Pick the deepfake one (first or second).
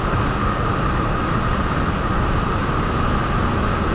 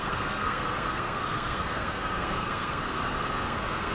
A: second